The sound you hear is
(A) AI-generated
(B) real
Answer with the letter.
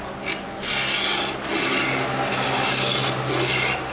B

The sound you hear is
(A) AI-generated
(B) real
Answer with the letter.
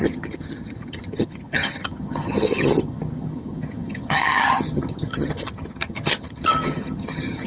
A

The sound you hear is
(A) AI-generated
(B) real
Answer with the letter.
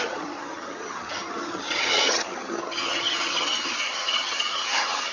A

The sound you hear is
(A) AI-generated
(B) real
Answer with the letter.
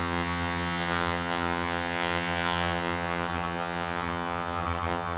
A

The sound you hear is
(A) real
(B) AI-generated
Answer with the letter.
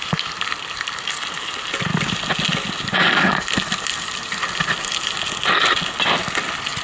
A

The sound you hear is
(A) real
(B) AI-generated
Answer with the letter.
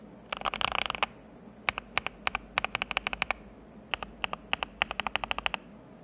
A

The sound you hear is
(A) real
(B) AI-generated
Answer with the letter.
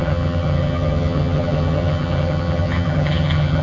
B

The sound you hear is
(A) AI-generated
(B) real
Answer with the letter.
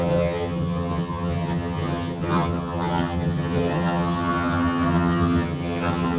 A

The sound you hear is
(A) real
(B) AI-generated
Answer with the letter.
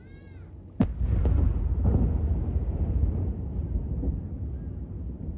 A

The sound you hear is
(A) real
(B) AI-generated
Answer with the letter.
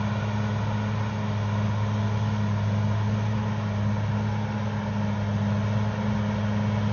A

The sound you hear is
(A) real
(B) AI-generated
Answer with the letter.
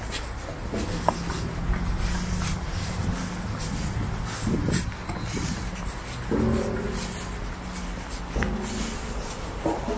A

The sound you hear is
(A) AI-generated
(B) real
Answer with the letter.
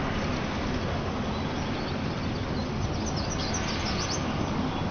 B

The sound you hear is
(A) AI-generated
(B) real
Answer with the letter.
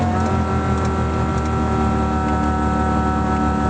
B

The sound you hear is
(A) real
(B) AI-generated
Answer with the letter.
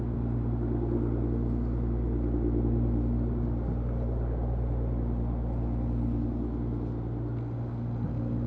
A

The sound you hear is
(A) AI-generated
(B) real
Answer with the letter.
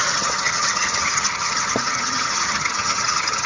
A